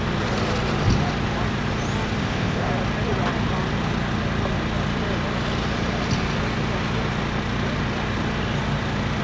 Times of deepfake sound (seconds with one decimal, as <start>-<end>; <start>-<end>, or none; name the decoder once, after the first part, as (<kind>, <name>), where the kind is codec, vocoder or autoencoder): 2.2-2.7 (codec, ZipCodec)